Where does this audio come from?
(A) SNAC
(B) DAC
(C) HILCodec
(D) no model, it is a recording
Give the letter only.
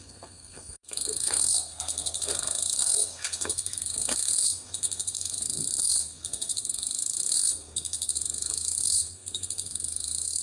A